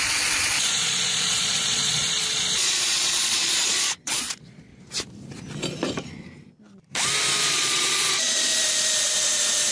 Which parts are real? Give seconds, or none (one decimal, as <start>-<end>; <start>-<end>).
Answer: 4.7-7.4; 8.5-9.7